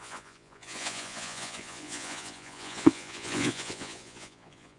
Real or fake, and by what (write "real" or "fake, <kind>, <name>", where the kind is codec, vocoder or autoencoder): fake, vocoder, Vocos